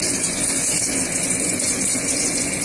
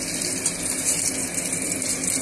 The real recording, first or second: second